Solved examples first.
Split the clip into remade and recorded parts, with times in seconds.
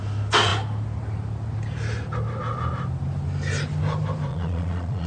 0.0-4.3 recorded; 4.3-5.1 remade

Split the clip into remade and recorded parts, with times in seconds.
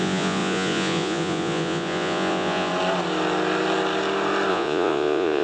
0.0-2.7 remade; 2.7-4.5 recorded; 4.5-5.4 remade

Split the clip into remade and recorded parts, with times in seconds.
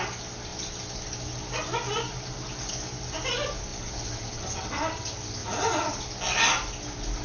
0.0-5.4 recorded; 5.4-6.0 remade; 6.0-7.2 recorded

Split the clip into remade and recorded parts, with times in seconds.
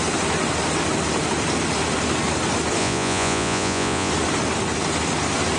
0.0-2.8 recorded; 2.8-4.1 remade; 4.1-5.6 recorded